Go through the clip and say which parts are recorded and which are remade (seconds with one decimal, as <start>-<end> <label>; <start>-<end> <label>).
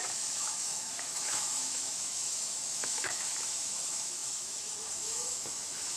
0.0-6.0 remade